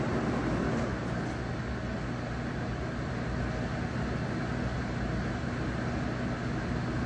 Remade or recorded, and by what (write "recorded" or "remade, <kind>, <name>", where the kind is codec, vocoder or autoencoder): recorded